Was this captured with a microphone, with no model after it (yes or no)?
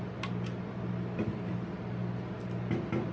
yes